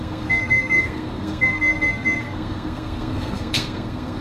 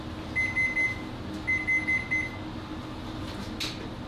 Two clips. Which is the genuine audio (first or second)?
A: second